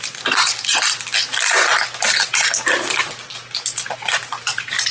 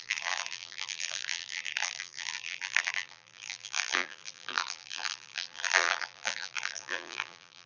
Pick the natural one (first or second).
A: first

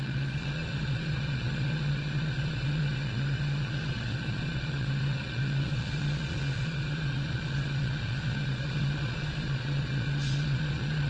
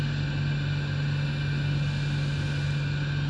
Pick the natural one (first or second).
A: second